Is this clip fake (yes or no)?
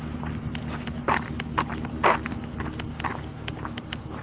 no